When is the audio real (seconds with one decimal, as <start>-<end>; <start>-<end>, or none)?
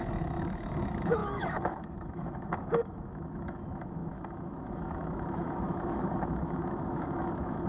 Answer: none